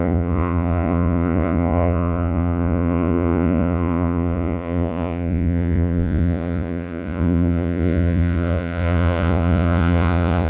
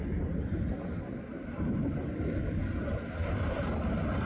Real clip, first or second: second